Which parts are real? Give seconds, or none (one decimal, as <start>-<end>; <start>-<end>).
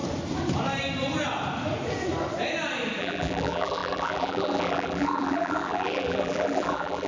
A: 0.0-3.0